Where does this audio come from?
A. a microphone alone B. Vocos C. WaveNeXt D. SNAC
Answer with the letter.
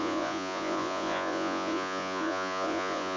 B